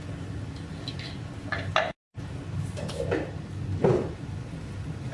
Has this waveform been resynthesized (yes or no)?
no